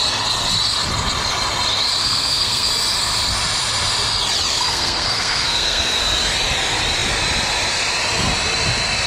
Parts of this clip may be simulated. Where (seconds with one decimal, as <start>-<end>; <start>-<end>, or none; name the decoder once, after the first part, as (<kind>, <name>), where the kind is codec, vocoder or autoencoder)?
2.0-2.7 (codec, SNAC); 4.5-6.0